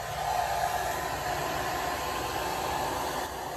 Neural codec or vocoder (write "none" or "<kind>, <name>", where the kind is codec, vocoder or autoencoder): none